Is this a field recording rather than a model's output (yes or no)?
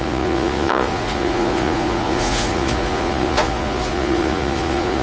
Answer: no